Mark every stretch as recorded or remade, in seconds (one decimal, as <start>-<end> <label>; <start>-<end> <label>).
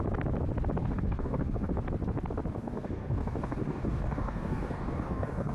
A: 0.0-0.8 recorded; 0.8-1.7 remade; 1.7-2.5 recorded; 2.5-5.5 remade